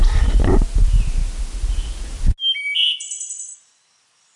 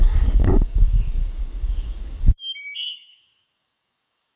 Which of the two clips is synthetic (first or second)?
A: second